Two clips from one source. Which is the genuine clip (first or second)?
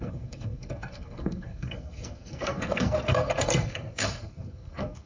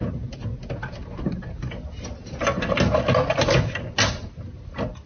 second